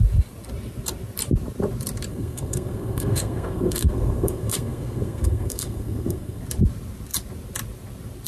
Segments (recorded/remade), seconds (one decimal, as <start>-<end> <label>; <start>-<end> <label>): 0.0-2.1 recorded; 2.1-6.4 remade; 6.4-8.3 recorded